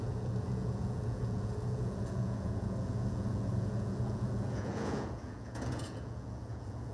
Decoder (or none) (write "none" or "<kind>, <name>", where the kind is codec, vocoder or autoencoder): vocoder, Vocos